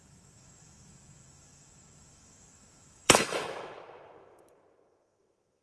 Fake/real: fake